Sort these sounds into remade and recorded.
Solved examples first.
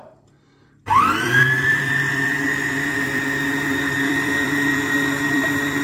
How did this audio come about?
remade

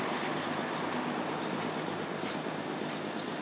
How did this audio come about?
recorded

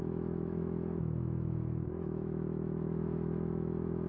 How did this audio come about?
remade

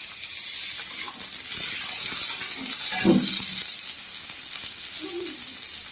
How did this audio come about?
recorded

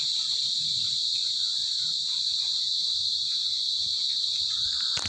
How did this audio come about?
remade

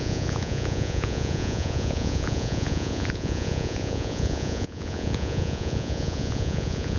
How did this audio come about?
remade